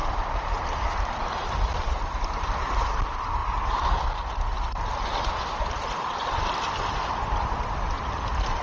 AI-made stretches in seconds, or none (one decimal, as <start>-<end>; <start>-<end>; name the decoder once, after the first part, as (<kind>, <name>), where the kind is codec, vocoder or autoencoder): 0.0-2.6 (vocoder, BigVGAN v2)